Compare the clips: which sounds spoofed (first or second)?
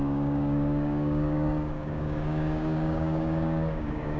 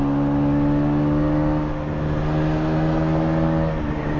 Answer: first